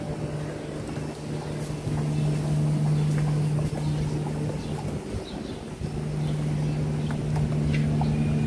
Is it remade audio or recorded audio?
recorded